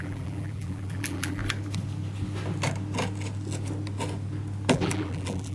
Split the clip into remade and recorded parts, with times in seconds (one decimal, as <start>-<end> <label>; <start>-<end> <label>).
0.0-1.4 remade; 1.4-4.7 recorded; 4.7-5.5 remade

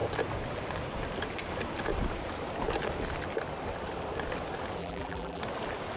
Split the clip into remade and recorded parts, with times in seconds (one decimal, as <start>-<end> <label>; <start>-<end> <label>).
0.0-4.8 recorded; 4.8-5.4 remade; 5.4-6.0 recorded

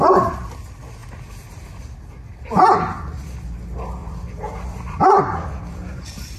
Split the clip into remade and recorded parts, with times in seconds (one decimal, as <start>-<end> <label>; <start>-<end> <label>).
0.0-4.0 recorded; 4.0-5.7 remade; 5.7-6.4 recorded

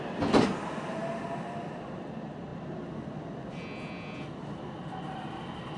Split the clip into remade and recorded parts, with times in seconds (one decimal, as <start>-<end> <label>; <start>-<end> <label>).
0.0-1.0 recorded; 1.0-1.7 remade; 1.7-5.8 recorded

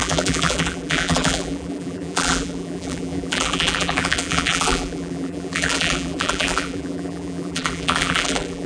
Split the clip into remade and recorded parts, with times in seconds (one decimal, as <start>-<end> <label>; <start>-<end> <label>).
0.0-8.7 remade

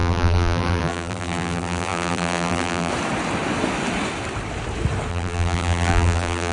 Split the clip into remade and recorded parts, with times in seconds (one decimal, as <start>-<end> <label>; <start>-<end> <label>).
0.0-2.9 remade; 2.9-5.1 recorded; 5.1-6.5 remade